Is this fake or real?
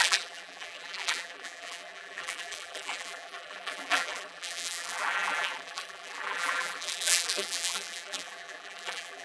fake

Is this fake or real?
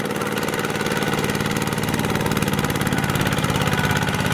real